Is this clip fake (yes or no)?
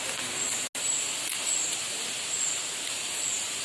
no